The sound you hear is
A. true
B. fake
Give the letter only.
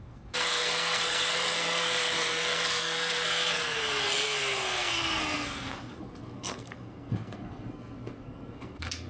B